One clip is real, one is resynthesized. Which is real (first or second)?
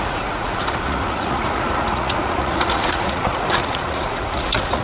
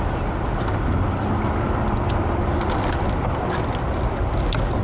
second